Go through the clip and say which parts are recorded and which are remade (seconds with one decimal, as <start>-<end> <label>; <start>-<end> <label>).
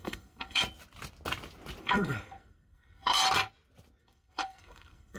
0.0-0.6 remade; 0.6-1.8 recorded; 1.8-3.2 remade; 3.2-4.0 recorded; 4.0-5.2 remade